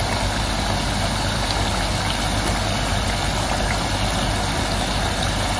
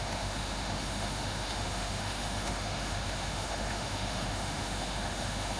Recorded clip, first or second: first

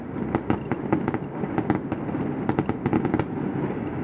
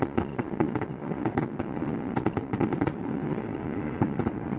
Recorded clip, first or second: first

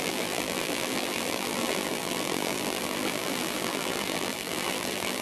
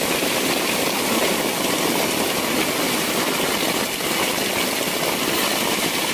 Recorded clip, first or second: second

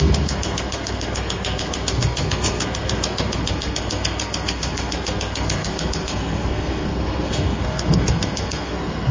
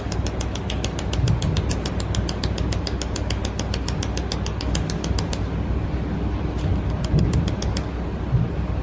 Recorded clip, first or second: second